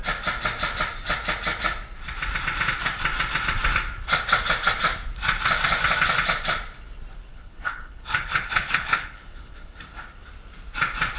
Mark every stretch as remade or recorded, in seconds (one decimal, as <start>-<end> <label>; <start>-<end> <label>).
0.0-7.3 recorded; 7.3-9.8 remade; 9.8-11.2 recorded